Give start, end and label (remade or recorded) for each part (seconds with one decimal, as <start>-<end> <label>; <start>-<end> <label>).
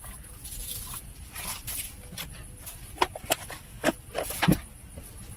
0.0-3.4 recorded; 3.4-3.9 remade; 3.9-5.4 recorded